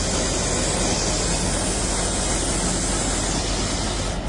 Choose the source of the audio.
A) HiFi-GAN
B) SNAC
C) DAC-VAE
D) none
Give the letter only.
D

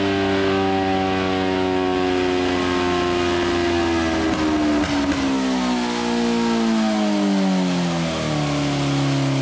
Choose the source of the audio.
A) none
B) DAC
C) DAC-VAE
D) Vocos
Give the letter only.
A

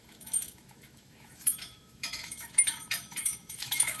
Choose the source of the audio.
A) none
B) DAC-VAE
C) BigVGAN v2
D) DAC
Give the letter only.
B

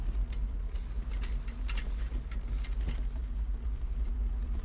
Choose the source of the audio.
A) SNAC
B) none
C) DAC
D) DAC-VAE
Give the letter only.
B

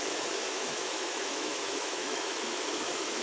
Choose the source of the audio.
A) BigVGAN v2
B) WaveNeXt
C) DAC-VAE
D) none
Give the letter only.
C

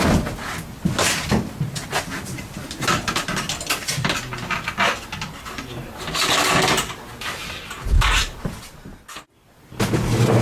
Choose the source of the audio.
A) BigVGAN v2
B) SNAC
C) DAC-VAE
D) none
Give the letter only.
D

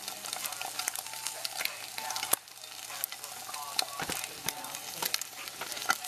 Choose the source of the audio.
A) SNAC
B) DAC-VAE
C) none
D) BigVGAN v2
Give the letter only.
C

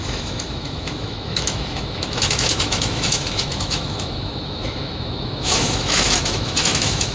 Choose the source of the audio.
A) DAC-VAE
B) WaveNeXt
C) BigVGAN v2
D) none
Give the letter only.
A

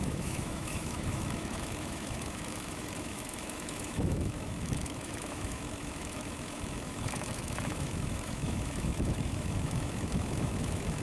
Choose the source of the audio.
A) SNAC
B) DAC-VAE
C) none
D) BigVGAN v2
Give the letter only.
B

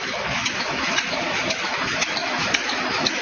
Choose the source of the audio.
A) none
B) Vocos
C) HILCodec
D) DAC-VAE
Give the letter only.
D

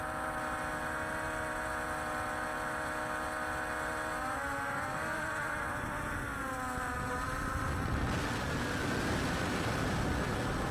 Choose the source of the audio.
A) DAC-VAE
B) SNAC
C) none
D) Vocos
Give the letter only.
C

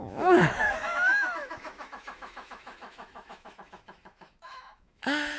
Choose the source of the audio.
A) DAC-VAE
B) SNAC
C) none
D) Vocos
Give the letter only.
A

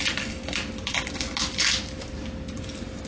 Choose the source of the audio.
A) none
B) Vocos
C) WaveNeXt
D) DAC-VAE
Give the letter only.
A